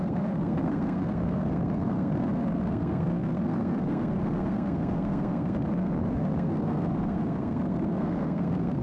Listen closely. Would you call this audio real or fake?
fake